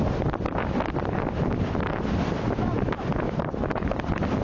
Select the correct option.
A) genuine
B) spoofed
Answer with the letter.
A